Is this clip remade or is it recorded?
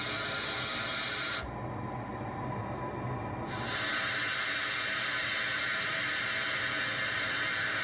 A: recorded